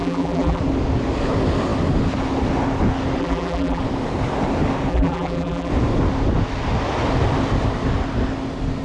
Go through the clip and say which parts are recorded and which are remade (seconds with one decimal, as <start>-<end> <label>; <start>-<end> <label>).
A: 0.0-0.6 remade; 0.6-3.2 recorded; 3.2-3.8 remade; 3.8-4.9 recorded; 4.9-5.7 remade; 5.7-8.8 recorded

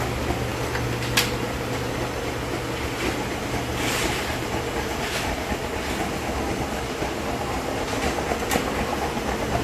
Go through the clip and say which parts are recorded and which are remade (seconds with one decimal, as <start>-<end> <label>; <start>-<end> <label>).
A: 0.0-3.7 recorded; 3.7-5.5 remade; 5.5-9.6 recorded

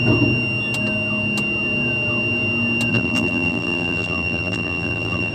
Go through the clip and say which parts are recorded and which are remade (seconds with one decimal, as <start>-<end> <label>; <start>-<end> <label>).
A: 0.0-2.9 recorded; 2.9-5.3 remade

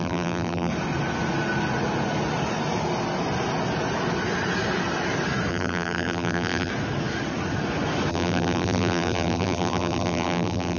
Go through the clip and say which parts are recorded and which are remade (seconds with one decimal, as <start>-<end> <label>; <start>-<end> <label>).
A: 0.0-0.7 remade; 0.7-5.5 recorded; 5.5-6.7 remade; 6.7-8.1 recorded; 8.1-10.8 remade

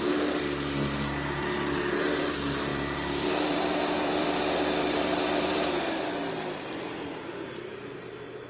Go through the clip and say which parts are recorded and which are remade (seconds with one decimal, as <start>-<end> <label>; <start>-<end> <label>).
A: 0.0-2.7 recorded; 2.7-5.7 remade; 5.7-8.5 recorded

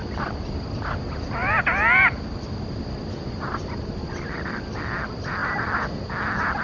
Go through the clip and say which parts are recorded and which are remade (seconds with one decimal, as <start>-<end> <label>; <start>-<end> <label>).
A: 0.0-6.6 recorded